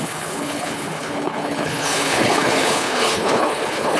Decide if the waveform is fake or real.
fake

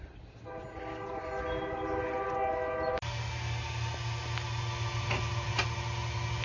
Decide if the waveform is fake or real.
real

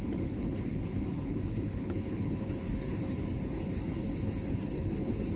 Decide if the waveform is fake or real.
fake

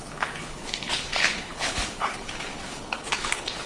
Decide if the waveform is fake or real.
fake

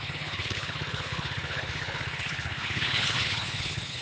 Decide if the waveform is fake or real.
fake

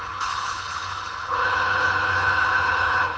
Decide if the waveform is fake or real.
fake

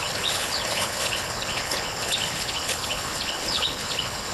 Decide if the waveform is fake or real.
fake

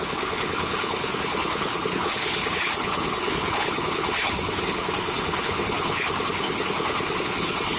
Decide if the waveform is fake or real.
fake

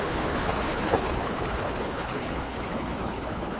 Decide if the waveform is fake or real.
fake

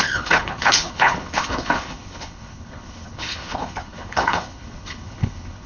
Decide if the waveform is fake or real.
fake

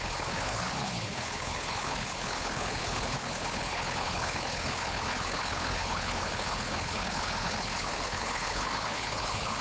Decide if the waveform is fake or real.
fake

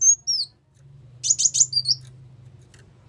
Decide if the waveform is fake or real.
real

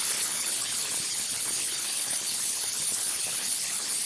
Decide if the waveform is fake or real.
fake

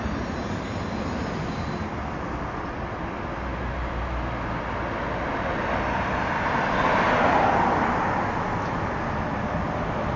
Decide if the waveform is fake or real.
real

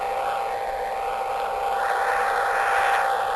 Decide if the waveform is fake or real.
real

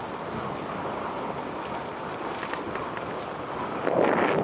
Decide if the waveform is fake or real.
real